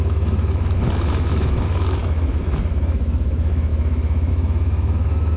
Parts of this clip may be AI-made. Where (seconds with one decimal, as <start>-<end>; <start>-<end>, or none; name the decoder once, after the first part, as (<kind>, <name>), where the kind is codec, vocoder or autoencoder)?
0.0-5.4 (autoencoder, DAC-VAE)